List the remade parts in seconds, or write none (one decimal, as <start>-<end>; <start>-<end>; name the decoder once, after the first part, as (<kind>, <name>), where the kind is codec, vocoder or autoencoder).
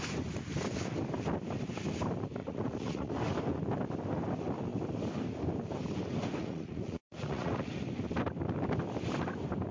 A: 2.4-3.1 (vocoder, Vocos); 6.4-7.7